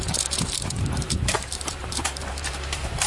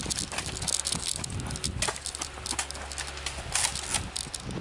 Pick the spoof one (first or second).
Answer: first